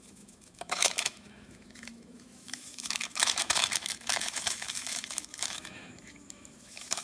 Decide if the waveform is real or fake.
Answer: fake